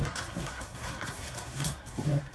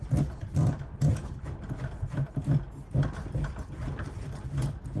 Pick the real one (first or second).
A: second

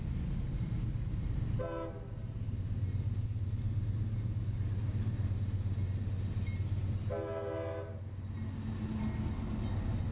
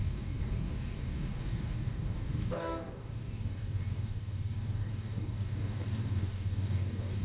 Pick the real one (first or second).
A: first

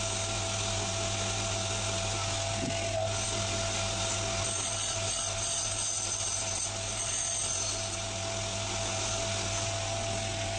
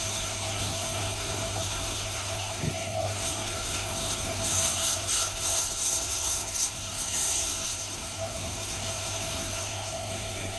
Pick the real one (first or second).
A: first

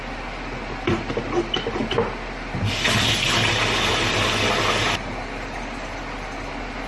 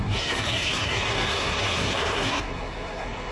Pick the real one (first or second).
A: first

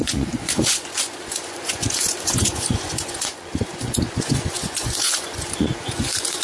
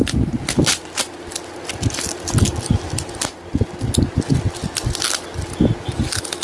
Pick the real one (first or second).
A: second